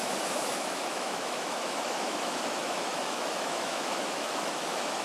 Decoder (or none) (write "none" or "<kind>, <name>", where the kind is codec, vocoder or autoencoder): autoencoder, DAC-VAE